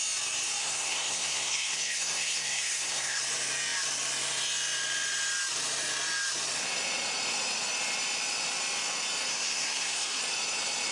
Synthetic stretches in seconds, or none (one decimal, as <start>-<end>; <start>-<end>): 0.6-3.2; 9.3-10.2